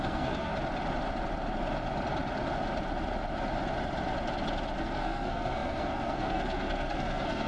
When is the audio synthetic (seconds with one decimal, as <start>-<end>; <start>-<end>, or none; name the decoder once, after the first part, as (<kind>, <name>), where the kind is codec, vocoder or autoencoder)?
0.0-0.5 (codec, SNAC); 4.8-7.5